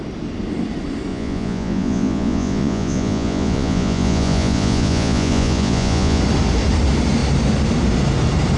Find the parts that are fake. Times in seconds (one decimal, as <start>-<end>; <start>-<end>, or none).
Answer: 1.1-6.2